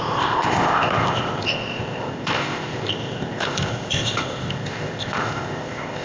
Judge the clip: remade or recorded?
remade